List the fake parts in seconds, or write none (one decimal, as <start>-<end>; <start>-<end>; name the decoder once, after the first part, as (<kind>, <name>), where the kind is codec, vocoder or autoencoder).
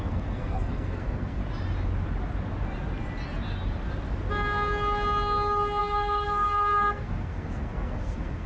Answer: 0.0-1.4 (codec, SNAC); 5.8-8.5